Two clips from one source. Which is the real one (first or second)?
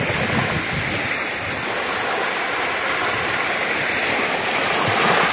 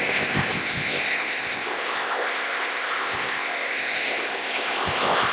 first